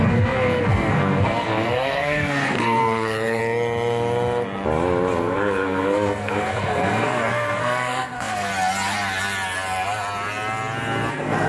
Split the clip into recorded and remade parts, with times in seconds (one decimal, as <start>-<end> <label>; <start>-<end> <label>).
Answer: 0.0-3.4 remade; 3.4-5.2 recorded; 5.2-8.5 remade; 8.5-11.1 recorded; 11.1-11.5 remade